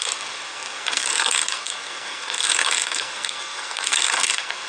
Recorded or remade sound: remade